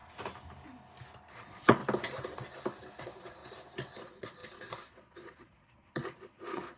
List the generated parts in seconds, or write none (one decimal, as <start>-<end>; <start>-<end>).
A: 1.3-1.8; 3.0-3.4; 4.0-6.8